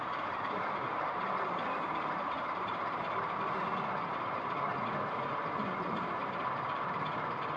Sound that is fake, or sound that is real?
fake